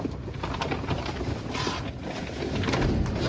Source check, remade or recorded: recorded